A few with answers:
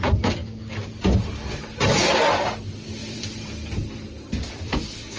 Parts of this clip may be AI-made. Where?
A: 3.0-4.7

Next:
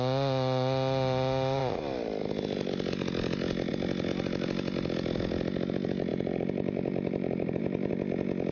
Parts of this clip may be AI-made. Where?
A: 6.1-7.9

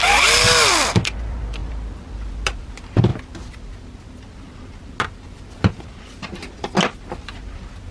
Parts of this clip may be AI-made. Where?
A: none